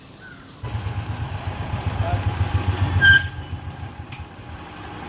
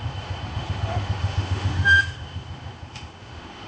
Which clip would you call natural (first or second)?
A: first